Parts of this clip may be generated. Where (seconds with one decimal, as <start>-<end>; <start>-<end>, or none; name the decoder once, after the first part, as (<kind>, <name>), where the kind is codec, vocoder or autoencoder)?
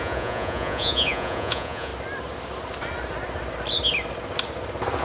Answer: 0.0-1.9 (vocoder, Vocos)